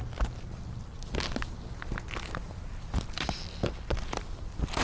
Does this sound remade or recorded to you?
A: recorded